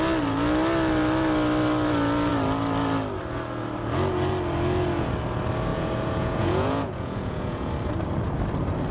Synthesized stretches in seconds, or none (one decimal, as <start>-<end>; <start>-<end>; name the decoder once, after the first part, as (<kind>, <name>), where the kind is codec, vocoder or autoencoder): 5.7-7.7 (vocoder, Vocos)